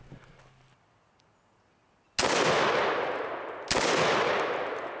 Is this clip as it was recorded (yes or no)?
yes